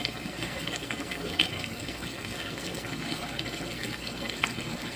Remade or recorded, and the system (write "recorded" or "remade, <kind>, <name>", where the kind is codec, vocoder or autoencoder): remade, codec, SNAC